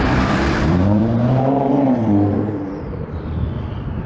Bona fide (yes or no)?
no